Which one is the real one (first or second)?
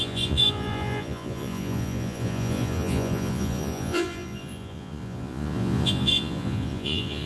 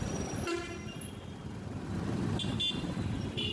second